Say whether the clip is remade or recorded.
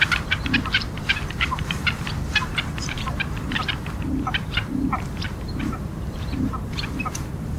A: remade